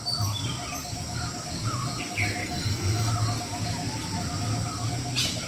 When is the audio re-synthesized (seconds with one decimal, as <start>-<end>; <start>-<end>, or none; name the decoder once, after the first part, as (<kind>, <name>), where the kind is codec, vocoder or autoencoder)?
2.4-3.1 (codec, SNAC)